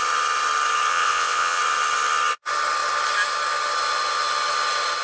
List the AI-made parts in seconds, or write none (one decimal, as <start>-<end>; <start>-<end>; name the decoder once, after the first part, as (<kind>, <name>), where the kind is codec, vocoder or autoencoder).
0.9-1.6 (vocoder, WaveNeXt)